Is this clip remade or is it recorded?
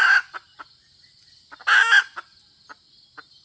recorded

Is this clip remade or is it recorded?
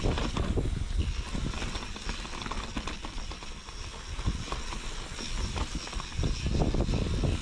recorded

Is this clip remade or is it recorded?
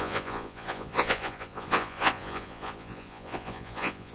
remade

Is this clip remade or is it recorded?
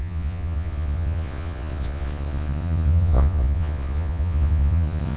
remade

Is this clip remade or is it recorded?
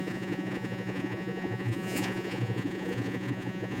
remade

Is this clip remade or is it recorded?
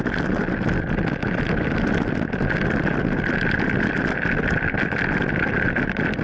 recorded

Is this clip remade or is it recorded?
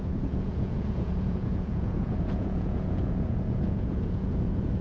remade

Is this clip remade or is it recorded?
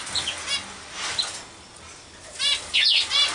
recorded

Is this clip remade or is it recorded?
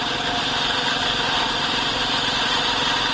recorded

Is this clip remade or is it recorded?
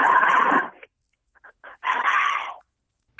recorded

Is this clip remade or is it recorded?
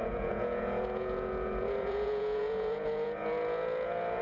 remade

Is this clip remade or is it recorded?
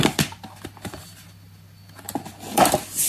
recorded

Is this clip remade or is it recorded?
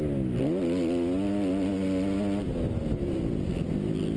recorded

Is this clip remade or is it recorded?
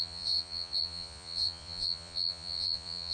remade